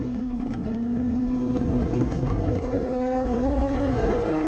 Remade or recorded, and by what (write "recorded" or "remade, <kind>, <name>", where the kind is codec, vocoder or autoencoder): remade, codec, SNAC